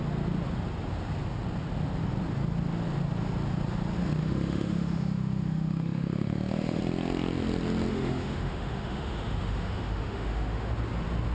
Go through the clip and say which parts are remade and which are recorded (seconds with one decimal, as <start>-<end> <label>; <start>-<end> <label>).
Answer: 0.0-4.2 recorded; 4.2-6.8 remade; 6.8-7.9 recorded; 7.9-10.7 remade; 10.7-11.3 recorded